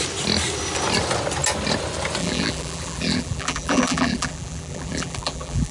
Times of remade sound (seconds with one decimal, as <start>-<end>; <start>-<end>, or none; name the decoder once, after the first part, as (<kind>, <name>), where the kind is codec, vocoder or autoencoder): 2.2-5.7 (vocoder, BigVGAN v2)